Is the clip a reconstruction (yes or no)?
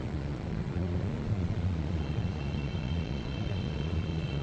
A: yes